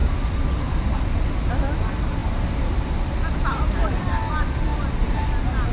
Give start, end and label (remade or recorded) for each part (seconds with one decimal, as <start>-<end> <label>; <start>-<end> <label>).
0.0-5.7 recorded